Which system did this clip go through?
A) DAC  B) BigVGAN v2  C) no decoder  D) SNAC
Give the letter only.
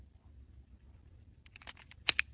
C